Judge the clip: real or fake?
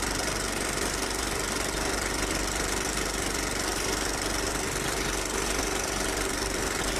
fake